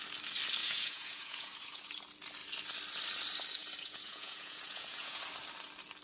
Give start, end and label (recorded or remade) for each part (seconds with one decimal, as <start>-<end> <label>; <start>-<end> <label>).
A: 0.0-0.6 recorded; 0.6-1.9 remade; 1.9-3.6 recorded; 3.6-5.2 remade; 5.2-6.0 recorded